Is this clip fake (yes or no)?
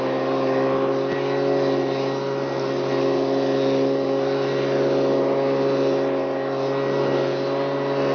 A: no